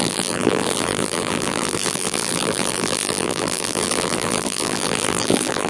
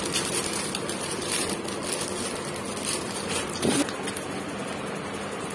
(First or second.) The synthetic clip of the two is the first